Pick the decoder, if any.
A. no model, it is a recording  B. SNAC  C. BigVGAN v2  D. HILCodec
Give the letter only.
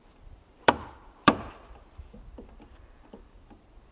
C